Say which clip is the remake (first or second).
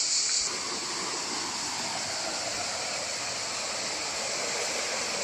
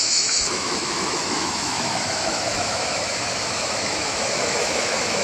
second